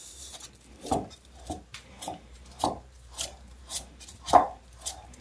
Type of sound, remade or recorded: remade